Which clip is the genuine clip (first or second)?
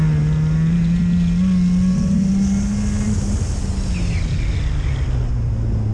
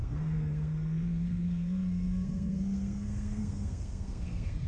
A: first